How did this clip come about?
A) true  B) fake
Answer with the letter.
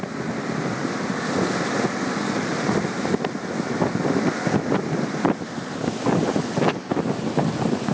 A